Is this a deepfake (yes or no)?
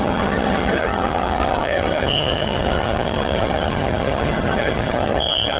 yes